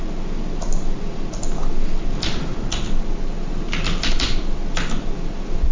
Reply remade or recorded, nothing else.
recorded